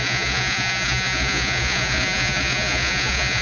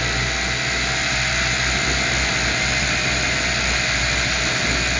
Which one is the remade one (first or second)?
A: first